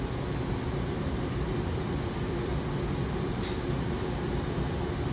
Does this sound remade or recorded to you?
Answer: recorded